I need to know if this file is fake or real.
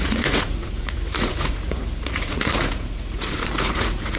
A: fake